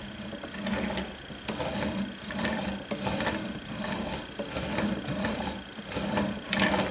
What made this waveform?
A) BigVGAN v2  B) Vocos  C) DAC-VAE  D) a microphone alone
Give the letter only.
D